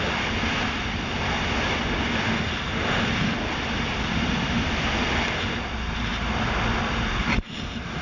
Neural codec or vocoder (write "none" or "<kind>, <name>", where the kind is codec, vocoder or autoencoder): none